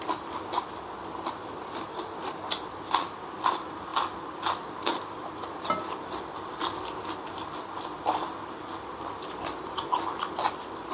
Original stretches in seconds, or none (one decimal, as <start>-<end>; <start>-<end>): 0.0-10.9